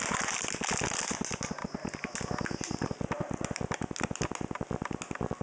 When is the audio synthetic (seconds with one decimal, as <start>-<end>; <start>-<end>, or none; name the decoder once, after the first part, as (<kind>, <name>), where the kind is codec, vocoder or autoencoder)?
none